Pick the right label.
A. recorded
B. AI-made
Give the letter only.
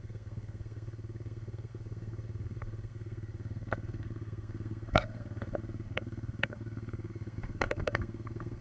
B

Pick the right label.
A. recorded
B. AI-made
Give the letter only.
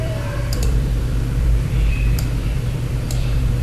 B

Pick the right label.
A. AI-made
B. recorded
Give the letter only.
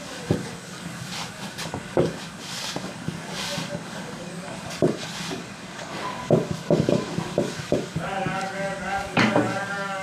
A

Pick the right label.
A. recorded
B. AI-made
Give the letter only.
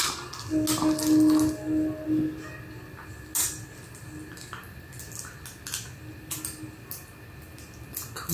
A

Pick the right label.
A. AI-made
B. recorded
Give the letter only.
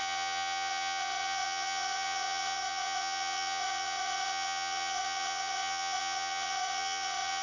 A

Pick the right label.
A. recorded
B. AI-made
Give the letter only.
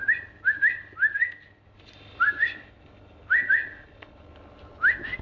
A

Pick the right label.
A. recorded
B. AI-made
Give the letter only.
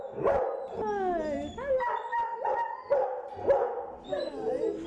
A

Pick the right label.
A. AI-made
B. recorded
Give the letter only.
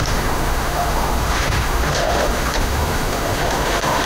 A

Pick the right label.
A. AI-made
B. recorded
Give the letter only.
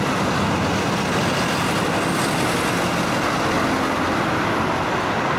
B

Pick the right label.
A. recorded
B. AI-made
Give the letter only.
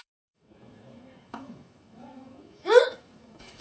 B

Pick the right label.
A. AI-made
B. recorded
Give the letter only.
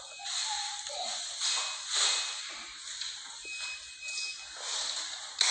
B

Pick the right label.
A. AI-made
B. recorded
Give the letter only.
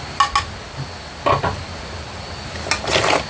B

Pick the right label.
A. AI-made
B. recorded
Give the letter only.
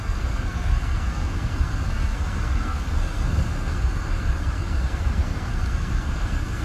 A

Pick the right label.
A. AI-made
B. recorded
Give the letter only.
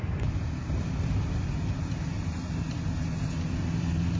B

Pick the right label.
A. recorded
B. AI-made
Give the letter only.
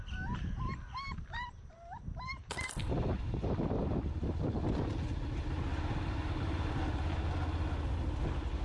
A